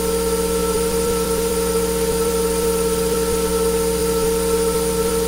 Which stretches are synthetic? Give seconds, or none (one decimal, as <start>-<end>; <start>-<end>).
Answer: 0.6-3.5; 4.0-5.3